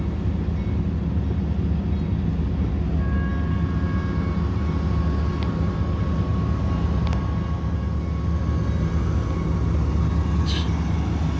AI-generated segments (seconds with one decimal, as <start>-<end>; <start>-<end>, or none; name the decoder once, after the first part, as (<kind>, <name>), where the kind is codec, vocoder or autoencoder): none